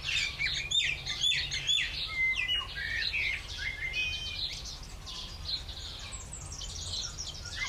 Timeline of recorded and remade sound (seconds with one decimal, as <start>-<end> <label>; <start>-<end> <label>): 0.0-7.7 recorded

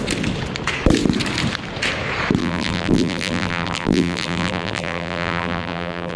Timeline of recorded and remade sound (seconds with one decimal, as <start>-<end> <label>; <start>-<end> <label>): 0.0-2.4 recorded; 2.4-6.2 remade

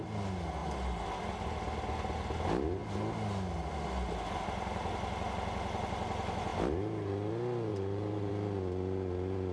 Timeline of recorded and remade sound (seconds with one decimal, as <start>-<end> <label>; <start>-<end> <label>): 0.0-7.7 recorded; 7.7-8.3 remade; 8.3-9.5 recorded

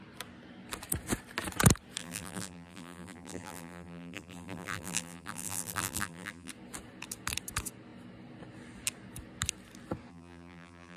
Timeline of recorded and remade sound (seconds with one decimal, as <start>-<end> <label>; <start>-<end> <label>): 0.0-2.0 recorded; 2.0-6.5 remade; 6.5-10.1 recorded; 10.1-11.0 remade

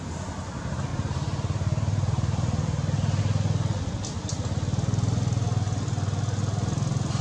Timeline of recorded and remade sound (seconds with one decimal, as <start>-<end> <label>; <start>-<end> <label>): 0.0-0.9 recorded; 0.9-3.2 remade; 3.2-7.2 recorded

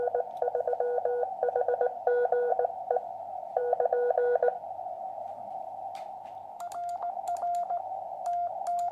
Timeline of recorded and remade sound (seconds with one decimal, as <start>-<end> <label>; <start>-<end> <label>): 0.0-2.5 recorded; 2.5-3.6 remade; 3.6-8.9 recorded